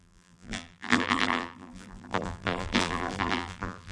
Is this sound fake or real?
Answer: fake